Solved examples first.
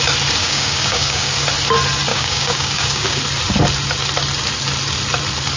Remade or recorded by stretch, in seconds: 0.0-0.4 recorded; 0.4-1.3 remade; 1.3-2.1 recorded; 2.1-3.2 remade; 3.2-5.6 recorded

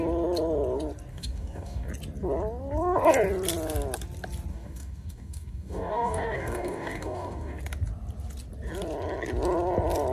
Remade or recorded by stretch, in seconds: 0.0-1.1 recorded; 1.1-1.9 remade; 1.9-4.5 recorded; 4.5-7.6 remade; 7.6-10.1 recorded

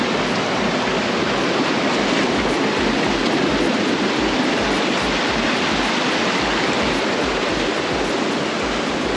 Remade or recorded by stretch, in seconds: 0.0-9.2 recorded

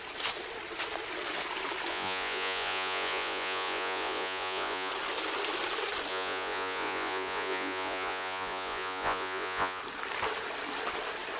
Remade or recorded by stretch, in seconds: 0.0-1.9 recorded; 1.9-4.9 remade; 4.9-6.1 recorded; 6.1-9.8 remade; 9.8-11.4 recorded

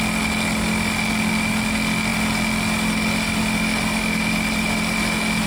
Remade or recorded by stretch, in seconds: 0.0-5.5 recorded

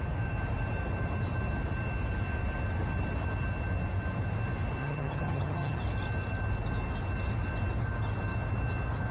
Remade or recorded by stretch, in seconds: 0.0-4.8 recorded; 4.8-5.8 remade; 5.8-9.1 recorded